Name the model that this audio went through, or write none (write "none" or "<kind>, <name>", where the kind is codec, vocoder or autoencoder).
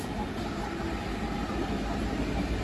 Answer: none